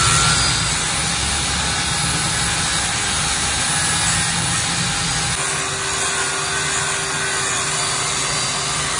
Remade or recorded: recorded